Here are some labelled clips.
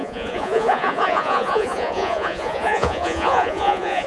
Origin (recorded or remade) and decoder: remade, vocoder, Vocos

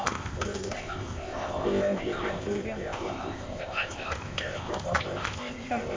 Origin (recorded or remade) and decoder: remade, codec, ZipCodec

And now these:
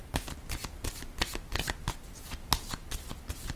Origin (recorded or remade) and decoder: recorded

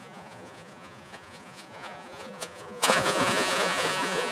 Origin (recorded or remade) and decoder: remade, vocoder, Vocos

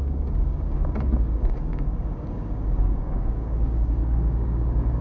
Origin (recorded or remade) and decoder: remade, codec, DAC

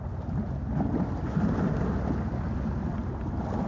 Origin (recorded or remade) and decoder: recorded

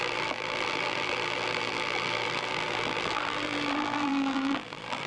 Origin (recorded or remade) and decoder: remade, vocoder, BigVGAN v2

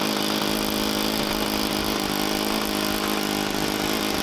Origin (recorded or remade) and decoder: recorded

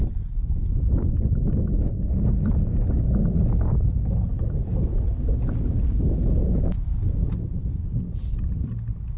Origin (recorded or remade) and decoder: recorded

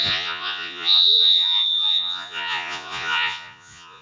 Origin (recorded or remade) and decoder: remade, vocoder, Vocos